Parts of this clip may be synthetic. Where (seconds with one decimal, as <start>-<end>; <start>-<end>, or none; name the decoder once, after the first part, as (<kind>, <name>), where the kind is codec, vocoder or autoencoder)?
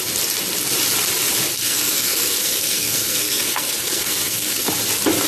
1.5-4.7 (codec, SNAC)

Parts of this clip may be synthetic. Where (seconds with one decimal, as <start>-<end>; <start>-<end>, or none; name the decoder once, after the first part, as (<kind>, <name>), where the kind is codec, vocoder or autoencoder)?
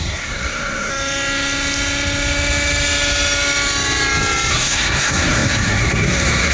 0.0-0.9 (codec, SNAC); 4.5-6.5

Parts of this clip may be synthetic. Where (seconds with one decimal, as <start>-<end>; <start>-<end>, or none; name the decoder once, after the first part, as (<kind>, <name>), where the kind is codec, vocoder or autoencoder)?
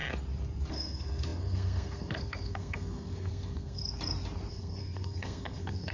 0.7-3.8 (codec, SNAC); 4.5-5.9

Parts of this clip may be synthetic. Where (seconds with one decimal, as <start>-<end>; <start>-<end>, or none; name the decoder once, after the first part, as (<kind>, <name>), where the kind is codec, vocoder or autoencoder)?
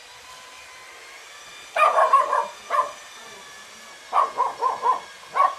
none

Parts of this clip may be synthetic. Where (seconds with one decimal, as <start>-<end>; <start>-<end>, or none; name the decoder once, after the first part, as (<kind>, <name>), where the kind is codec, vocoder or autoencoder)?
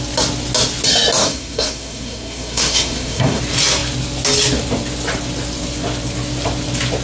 1.2-3.4 (codec, SNAC)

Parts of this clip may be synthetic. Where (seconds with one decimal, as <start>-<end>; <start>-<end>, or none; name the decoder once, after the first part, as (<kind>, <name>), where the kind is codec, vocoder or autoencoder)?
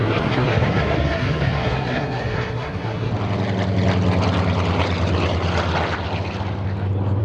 0.0-3.1 (codec, SNAC)